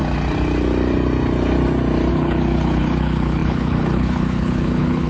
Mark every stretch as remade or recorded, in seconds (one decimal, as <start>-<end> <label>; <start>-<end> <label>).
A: 0.0-2.1 recorded; 2.1-5.1 remade